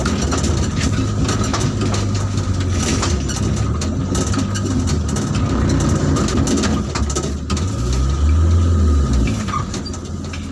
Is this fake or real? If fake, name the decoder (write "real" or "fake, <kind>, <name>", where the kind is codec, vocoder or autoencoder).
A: real